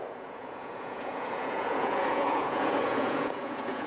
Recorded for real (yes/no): no